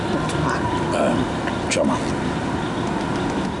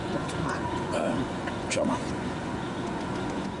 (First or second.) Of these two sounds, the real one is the first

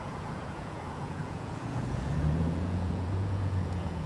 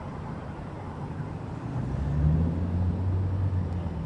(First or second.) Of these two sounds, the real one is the second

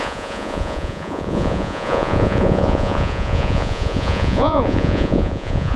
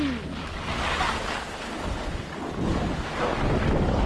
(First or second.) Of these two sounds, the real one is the second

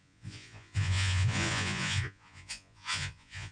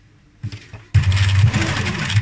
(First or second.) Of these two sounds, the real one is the second